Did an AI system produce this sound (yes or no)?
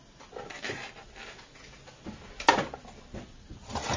no